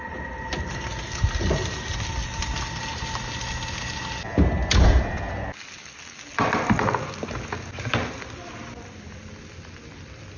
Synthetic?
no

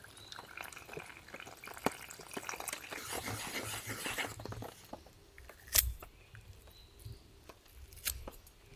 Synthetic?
no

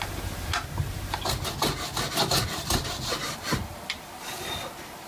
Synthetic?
no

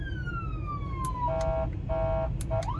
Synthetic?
no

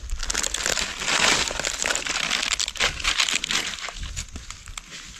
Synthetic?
no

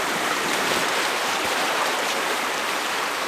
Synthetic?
yes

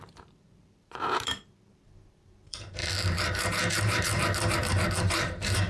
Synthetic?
yes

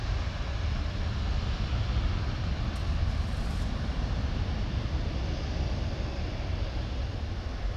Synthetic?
no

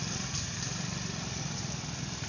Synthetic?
no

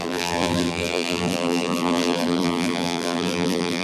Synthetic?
yes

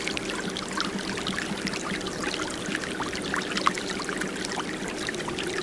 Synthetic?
no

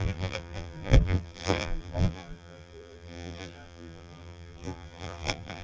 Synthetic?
yes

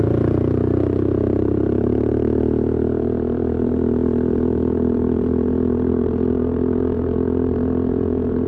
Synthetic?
yes